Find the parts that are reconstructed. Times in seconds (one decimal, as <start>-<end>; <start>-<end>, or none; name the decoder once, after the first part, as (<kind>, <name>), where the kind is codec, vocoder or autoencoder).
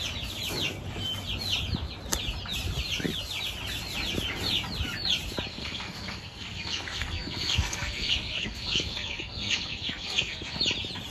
5.5-10.6 (codec, SNAC)